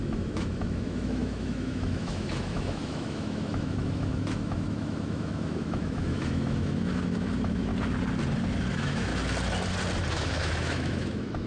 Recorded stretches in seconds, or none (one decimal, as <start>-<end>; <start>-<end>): 7.7-8.7; 9.1-10.1

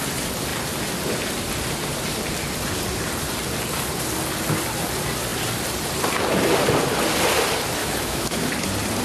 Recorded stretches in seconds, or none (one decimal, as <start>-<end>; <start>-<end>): 0.0-7.8; 8.5-9.0

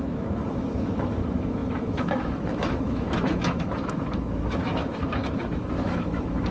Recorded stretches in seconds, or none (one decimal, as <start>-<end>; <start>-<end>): none

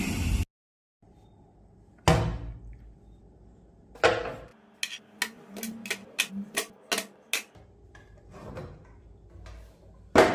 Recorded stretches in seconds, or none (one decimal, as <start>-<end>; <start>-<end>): 0.0-10.3